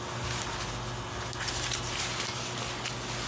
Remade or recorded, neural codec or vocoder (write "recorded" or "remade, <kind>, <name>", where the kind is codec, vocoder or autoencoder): recorded